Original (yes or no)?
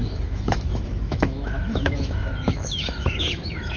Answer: no